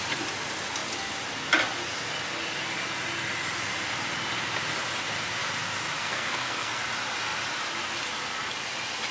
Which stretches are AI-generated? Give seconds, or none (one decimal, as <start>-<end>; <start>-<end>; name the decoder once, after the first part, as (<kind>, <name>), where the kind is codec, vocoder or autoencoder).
6.0-6.8 (codec, SNAC)